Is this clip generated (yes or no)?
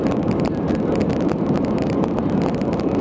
yes